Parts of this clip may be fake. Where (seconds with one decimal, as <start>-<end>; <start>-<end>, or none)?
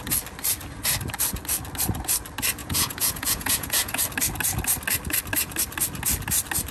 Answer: 2.6-4.0